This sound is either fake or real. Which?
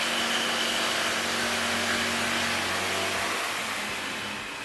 real